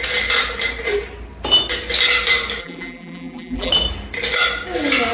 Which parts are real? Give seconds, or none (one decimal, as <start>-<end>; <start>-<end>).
0.0-2.6; 3.7-5.1